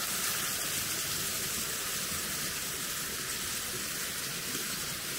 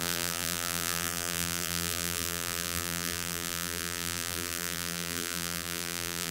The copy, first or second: second